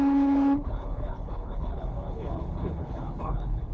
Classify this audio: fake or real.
fake